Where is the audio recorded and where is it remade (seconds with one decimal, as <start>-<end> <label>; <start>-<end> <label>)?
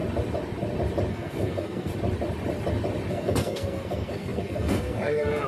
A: 0.0-1.1 recorded; 1.1-1.9 remade; 1.9-3.1 recorded; 3.1-5.5 remade